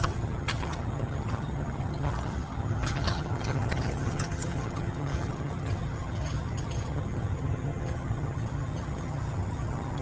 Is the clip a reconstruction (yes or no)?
yes